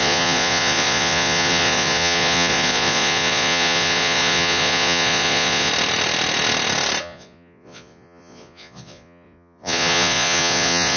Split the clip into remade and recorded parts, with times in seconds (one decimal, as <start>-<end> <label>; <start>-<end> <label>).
0.0-5.7 remade; 5.7-7.0 recorded; 7.0-11.0 remade